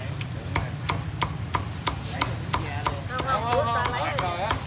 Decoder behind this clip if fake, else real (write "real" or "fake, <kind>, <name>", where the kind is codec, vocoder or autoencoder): real